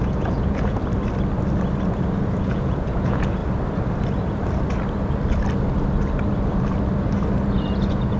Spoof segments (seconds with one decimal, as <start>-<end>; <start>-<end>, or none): 0.0-0.8; 2.4-3.4; 7.5-8.2